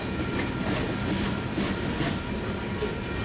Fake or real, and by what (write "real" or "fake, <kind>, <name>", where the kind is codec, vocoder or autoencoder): real